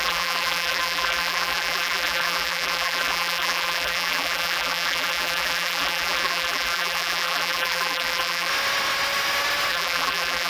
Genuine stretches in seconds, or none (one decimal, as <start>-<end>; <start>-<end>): 8.5-9.7